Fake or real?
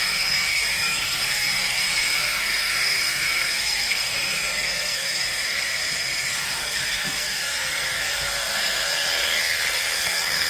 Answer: fake